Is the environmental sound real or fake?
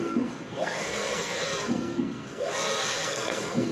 fake